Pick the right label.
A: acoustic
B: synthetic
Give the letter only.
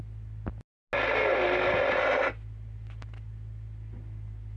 A